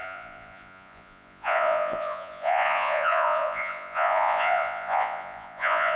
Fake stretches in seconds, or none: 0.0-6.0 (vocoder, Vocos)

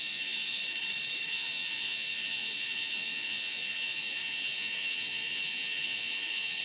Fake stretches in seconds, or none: 0.0-0.6 (vocoder, Vocos); 1.3-6.6

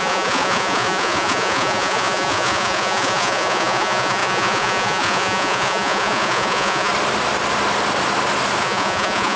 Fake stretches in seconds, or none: 0.0-6.9 (vocoder, Vocos); 8.6-9.4

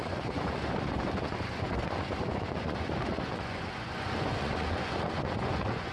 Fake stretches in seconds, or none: 0.0-5.9 (vocoder, Vocos)